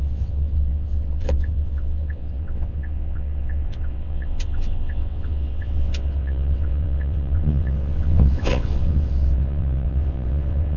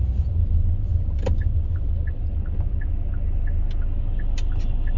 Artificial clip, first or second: first